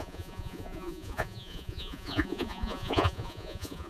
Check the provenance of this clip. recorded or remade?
remade